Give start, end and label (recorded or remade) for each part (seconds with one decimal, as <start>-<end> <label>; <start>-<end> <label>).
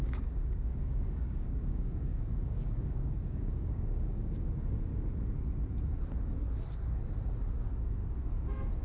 0.0-4.9 remade; 4.9-7.6 recorded; 7.6-8.0 remade; 8.0-8.8 recorded